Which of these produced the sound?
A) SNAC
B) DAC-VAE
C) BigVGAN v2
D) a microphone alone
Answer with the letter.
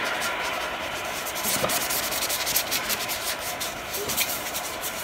C